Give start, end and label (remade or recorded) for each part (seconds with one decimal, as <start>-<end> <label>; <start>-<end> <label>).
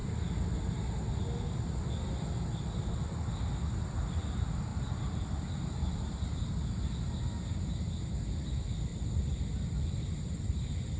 0.0-4.7 recorded; 4.7-6.7 remade; 6.7-8.9 recorded; 8.9-9.8 remade; 9.8-11.0 recorded